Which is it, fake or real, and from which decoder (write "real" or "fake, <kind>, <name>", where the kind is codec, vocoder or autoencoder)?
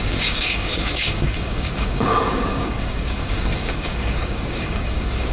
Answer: fake, codec, DAC